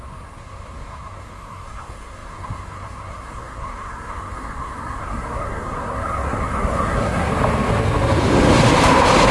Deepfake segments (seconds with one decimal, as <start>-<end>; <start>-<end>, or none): 0.0-7.3